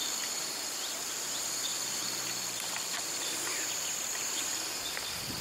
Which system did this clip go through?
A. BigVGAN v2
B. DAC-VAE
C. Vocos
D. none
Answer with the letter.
A